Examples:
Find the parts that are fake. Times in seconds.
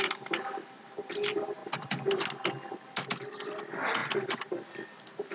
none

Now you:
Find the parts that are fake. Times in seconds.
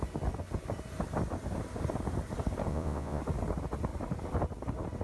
2.7-3.2 (vocoder, Vocos)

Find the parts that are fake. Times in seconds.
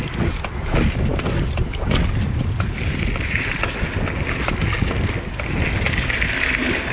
none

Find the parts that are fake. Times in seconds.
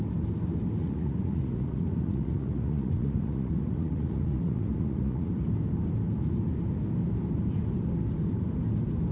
0.8-5.3 (vocoder, Vocos)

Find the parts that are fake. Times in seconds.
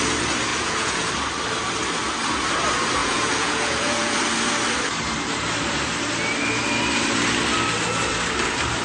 0.5-1.1 (vocoder, Vocos); 3.0-4.2